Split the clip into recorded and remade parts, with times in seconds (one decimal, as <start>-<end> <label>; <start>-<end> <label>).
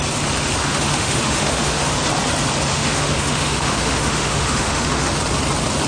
0.0-0.6 recorded; 0.6-1.9 remade; 1.9-2.7 recorded; 2.7-5.2 remade; 5.2-5.9 recorded